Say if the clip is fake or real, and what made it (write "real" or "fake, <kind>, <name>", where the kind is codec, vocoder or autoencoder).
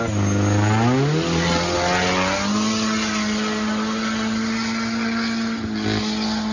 real